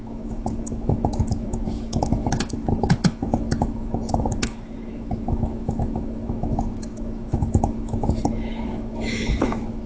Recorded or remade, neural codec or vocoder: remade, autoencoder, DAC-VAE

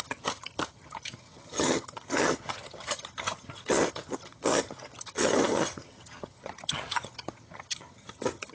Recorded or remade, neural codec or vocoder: remade, vocoder, HiFi-GAN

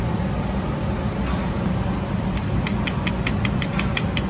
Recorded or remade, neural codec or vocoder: recorded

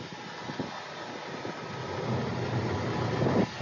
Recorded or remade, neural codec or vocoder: recorded